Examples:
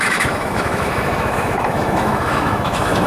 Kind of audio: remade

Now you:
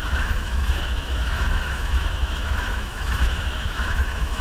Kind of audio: remade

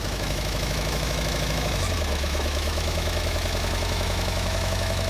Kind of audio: remade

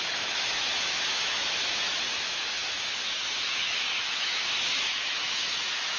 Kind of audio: remade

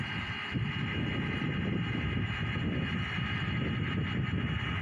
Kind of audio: recorded